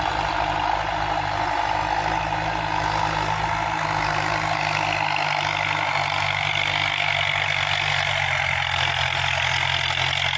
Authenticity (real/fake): real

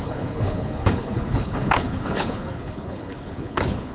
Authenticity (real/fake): fake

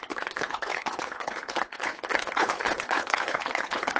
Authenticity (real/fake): fake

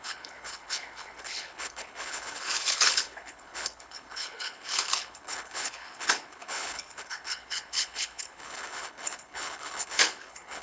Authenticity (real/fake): fake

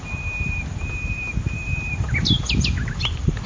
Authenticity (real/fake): real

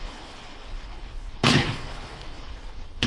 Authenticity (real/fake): fake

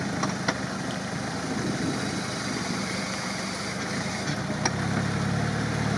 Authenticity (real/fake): real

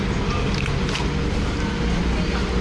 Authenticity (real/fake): real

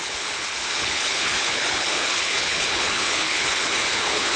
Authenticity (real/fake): fake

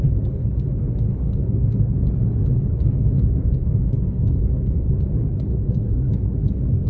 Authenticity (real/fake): fake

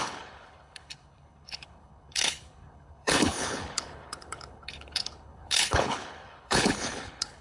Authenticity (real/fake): fake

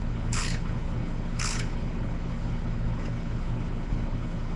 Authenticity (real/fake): fake